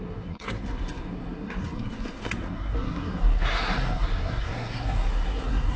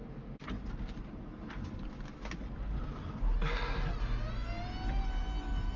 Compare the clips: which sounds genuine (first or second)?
second